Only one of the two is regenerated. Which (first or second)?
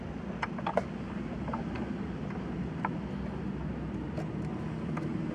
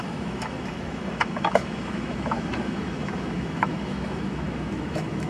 second